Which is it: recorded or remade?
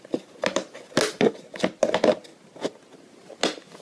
recorded